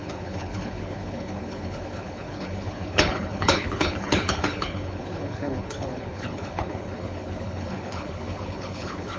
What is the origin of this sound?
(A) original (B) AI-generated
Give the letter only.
B